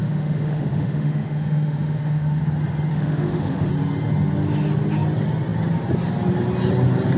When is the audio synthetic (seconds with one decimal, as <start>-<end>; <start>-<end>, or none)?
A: 0.0-2.4; 2.9-3.7